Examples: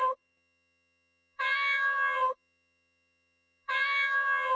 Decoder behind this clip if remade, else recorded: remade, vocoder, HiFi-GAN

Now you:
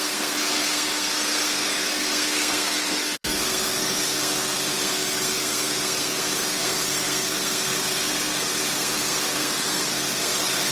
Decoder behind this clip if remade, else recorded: remade, codec, SNAC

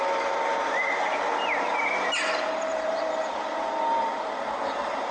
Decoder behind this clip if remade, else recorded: remade, vocoder, BigVGAN v2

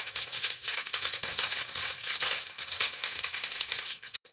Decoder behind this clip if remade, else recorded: remade, codec, SNAC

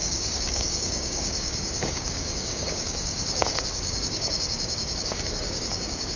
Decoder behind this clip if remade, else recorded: remade, codec, DAC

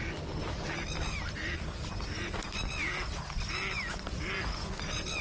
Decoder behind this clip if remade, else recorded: recorded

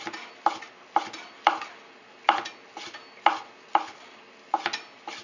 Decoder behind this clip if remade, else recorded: recorded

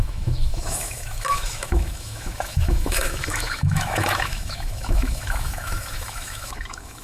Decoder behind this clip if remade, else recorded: remade, autoencoder, DAC-VAE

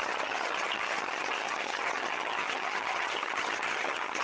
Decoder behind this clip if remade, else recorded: remade, vocoder, HiFi-GAN